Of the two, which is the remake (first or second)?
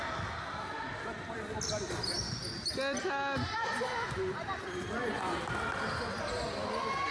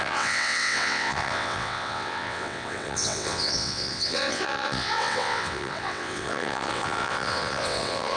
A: second